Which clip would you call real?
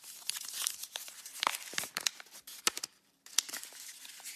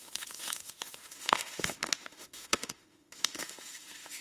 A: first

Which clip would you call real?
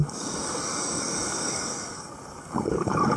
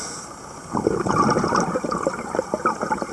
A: second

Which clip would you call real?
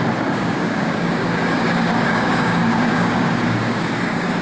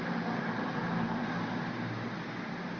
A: second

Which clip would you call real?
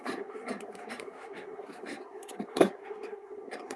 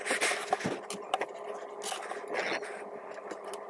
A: second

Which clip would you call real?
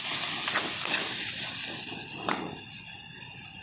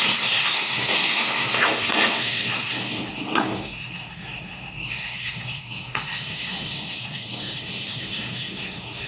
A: first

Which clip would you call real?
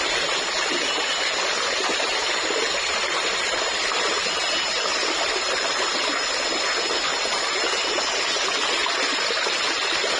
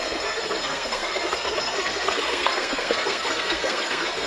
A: first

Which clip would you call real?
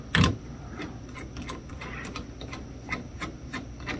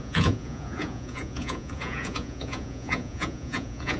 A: first